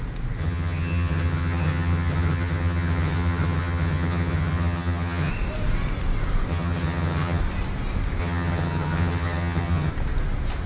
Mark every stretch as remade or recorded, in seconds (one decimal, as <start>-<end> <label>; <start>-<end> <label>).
0.0-0.4 recorded; 0.4-5.3 remade; 5.3-6.5 recorded; 6.5-7.4 remade; 7.4-8.2 recorded; 8.2-9.9 remade; 9.9-10.7 recorded